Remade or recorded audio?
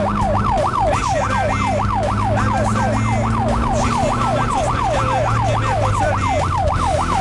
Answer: recorded